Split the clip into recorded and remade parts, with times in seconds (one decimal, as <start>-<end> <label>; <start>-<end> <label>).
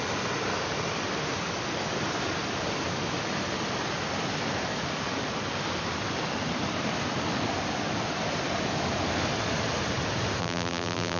0.0-10.4 recorded; 10.4-11.2 remade